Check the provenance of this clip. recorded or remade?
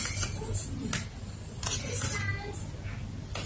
recorded